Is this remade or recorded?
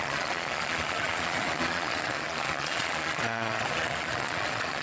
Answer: remade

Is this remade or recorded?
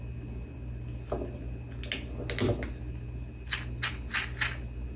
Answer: recorded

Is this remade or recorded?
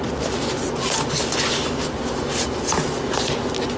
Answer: recorded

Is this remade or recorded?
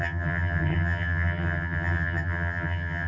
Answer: remade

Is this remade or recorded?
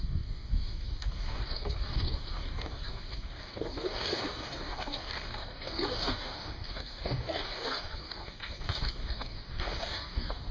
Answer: remade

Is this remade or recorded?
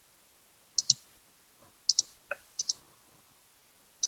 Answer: recorded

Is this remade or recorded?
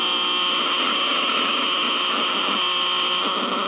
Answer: recorded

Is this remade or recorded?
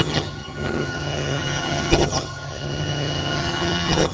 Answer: remade